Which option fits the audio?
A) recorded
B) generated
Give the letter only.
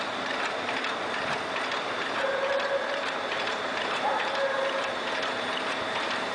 B